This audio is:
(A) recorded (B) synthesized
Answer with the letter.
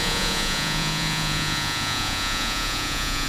B